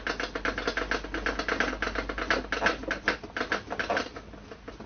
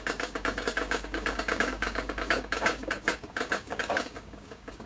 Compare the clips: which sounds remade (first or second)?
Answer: second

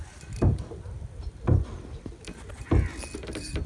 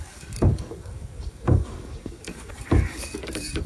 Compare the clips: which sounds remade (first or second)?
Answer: second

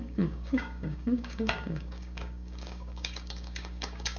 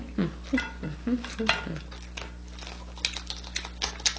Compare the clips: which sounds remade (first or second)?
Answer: first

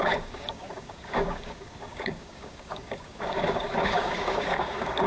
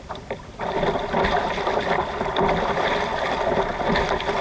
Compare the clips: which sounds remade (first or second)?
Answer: first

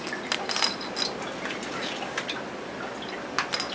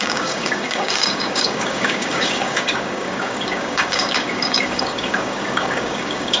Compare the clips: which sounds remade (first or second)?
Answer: second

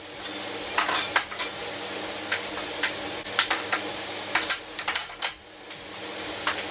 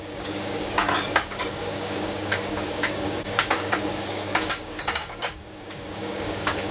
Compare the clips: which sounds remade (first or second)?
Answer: second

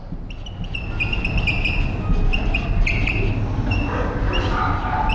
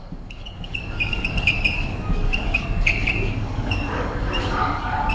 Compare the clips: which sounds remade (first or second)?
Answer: second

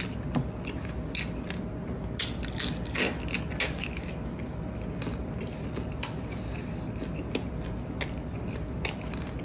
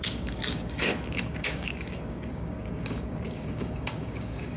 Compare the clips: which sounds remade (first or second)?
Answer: second